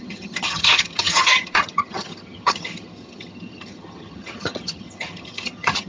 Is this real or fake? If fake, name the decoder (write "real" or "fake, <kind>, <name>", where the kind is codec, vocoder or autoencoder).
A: fake, vocoder, HiFi-GAN